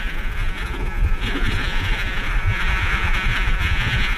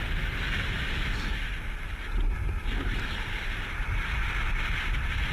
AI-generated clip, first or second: first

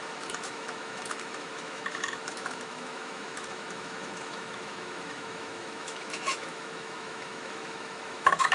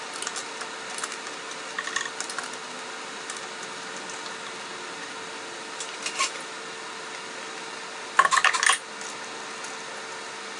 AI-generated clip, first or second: first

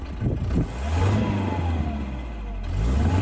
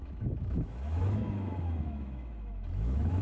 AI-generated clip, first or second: second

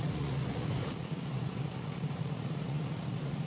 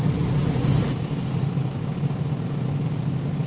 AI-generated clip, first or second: first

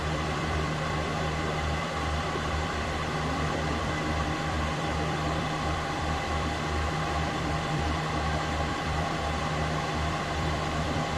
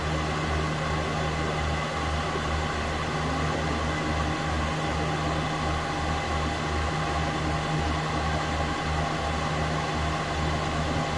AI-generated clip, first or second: first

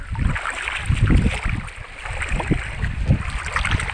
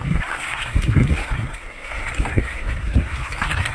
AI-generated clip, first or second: second